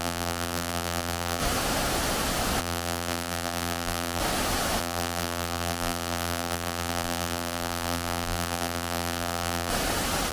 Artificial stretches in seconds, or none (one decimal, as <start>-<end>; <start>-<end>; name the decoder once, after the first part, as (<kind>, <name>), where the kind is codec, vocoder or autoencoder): 0.0-1.4 (vocoder, BigVGAN v2); 2.6-4.2; 4.8-9.7